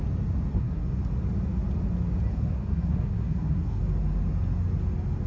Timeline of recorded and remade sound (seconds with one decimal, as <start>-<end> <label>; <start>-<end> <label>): 0.0-0.5 recorded; 0.5-1.0 remade; 1.0-2.3 recorded; 2.3-3.8 remade; 3.8-5.3 recorded